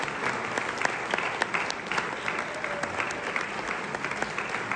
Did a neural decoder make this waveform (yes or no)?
no